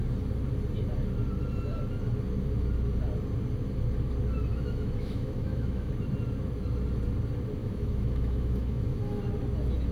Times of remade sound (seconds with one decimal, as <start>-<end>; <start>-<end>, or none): 4.5-5.9; 7.6-9.2